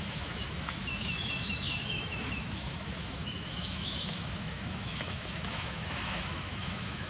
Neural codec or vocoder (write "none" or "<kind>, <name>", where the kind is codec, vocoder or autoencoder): autoencoder, DAC-VAE